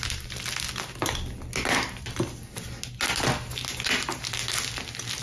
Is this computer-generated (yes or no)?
no